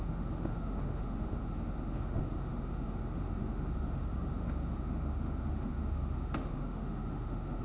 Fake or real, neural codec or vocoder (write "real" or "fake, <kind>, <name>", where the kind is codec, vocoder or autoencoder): fake, autoencoder, DAC-VAE